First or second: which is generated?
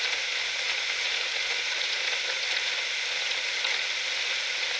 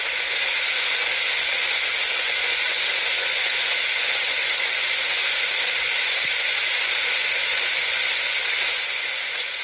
second